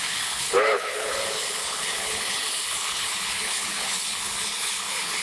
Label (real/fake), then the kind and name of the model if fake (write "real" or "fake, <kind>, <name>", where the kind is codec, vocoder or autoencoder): fake, codec, HILCodec